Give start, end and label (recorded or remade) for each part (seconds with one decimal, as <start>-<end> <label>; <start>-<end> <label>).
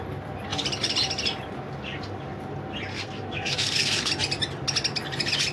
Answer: 0.0-2.9 recorded; 2.9-4.1 remade; 4.1-5.5 recorded